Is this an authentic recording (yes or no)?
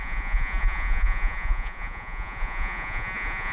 no